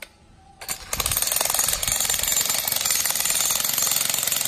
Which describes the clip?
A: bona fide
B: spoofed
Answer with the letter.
A